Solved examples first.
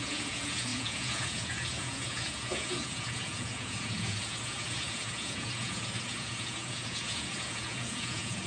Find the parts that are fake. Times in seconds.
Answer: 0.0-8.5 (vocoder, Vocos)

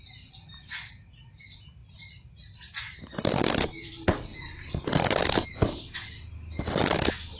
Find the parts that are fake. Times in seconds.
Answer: none